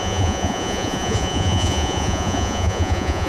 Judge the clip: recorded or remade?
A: remade